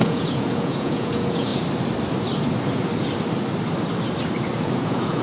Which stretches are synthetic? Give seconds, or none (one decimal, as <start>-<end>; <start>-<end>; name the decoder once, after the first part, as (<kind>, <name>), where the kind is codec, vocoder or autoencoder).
0.0-1.5 (vocoder, Vocos); 4.6-5.2